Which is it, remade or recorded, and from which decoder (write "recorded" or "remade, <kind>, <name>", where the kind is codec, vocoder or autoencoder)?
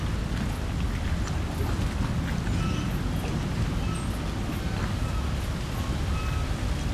recorded